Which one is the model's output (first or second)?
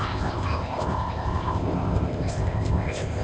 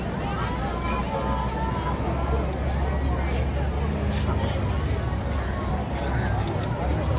first